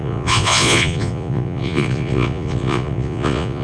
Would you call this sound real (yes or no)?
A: no